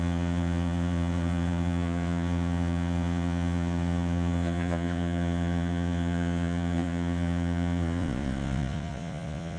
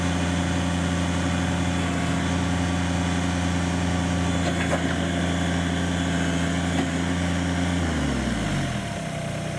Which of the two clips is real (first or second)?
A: second